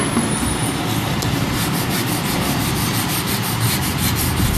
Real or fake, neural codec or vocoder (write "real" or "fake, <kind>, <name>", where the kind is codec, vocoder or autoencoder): fake, vocoder, BigVGAN v2